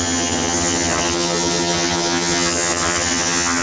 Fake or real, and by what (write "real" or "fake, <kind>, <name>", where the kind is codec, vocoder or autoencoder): fake, vocoder, HiFi-GAN